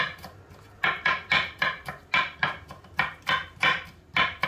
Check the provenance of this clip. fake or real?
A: real